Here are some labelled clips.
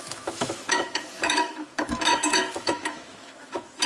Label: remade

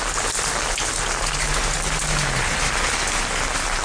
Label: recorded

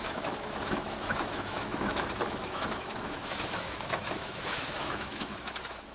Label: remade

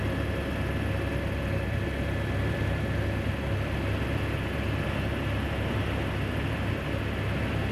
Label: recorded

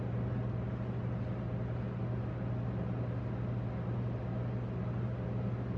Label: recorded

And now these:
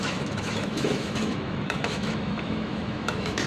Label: remade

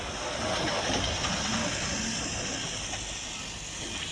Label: recorded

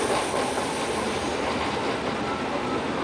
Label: recorded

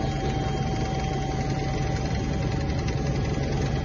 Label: recorded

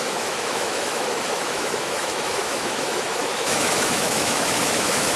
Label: remade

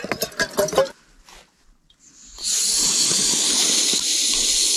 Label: recorded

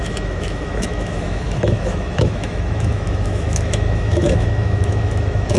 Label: remade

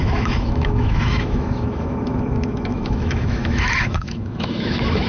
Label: remade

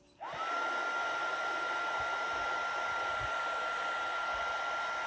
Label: recorded